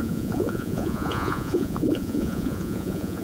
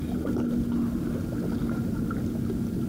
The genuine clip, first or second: second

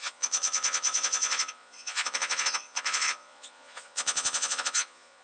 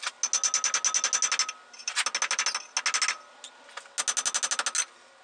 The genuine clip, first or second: second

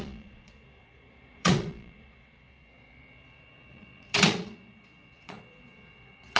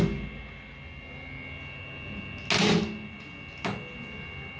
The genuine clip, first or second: second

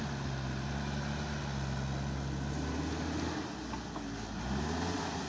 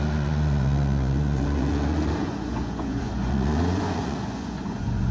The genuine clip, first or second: first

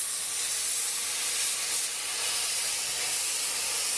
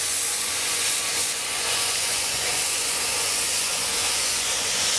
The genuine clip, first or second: first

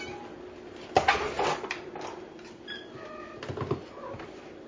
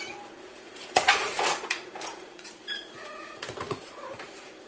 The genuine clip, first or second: first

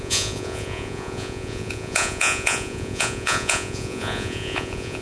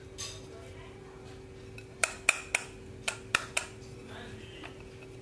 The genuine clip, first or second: second